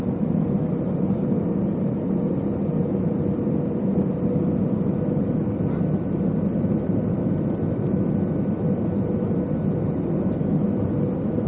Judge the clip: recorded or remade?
recorded